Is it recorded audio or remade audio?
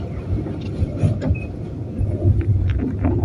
remade